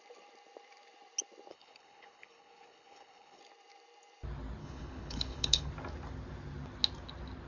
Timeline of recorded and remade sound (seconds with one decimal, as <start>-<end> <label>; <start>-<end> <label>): 0.0-1.5 recorded; 1.5-3.4 remade; 3.4-4.6 recorded; 4.6-5.7 remade; 5.7-7.5 recorded